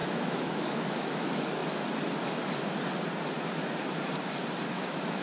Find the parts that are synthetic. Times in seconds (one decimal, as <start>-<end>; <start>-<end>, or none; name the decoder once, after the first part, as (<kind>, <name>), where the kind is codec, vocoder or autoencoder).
0.0-1.6 (autoencoder, DAC-VAE); 4.7-5.2